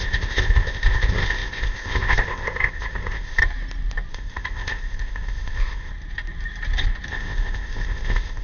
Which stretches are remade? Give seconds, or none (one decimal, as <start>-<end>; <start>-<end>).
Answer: 0.0-3.4; 4.1-5.9; 7.1-8.4